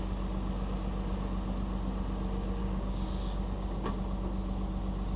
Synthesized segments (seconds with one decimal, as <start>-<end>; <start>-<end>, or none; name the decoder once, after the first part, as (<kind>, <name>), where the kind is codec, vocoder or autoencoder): 2.6-3.9 (codec, DAC)